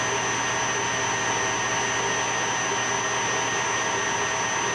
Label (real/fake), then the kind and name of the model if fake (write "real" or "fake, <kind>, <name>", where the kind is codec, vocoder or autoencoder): real